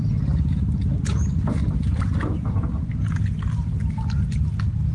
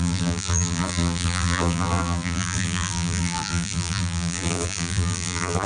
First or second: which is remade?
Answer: second